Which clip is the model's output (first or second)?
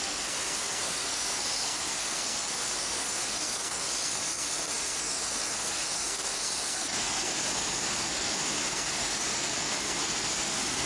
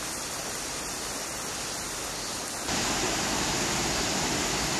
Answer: first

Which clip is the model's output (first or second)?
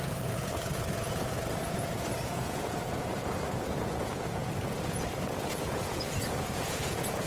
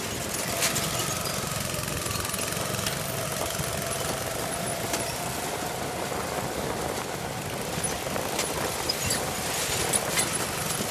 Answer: first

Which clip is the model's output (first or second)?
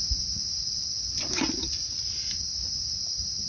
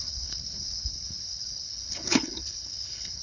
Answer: second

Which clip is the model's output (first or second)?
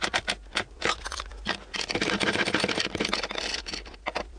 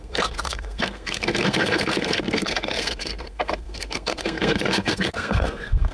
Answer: second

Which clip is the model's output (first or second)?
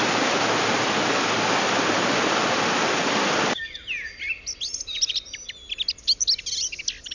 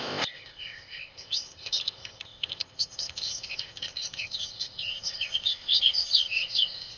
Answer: second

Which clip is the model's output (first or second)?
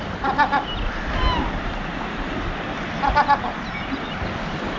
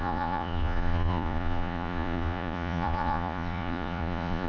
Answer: second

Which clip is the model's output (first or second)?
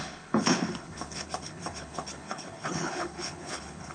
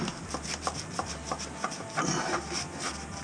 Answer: first